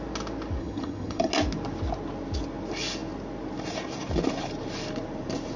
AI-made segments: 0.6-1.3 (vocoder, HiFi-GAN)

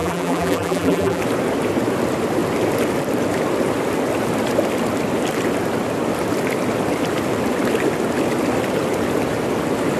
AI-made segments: 0.0-1.2 (vocoder, BigVGAN v2)

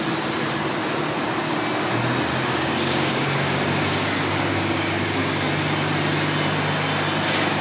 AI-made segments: 2.3-5.5 (codec, DAC)

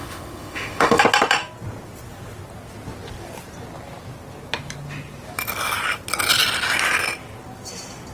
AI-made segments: 0.0-1.0 (autoencoder, DAC-VAE)